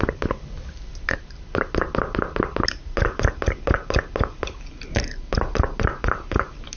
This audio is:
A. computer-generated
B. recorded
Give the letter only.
B